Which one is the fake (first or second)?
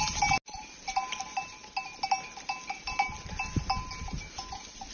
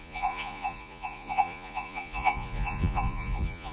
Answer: second